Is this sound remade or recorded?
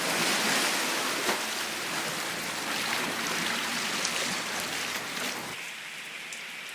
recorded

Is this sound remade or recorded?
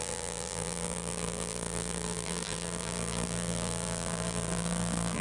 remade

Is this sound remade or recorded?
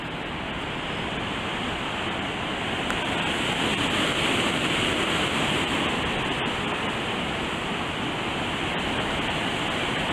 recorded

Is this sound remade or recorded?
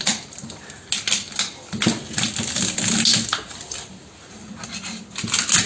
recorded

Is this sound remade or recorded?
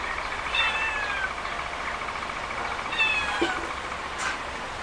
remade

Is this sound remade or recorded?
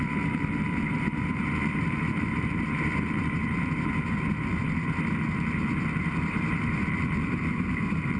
remade